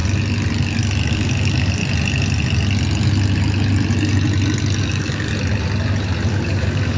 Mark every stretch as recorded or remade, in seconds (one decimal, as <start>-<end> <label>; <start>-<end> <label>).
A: 0.0-1.1 recorded; 1.1-1.8 remade; 1.8-4.8 recorded; 4.8-5.3 remade; 5.3-6.3 recorded; 6.3-7.0 remade